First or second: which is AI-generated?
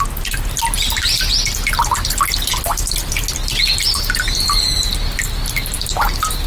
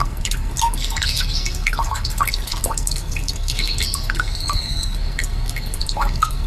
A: second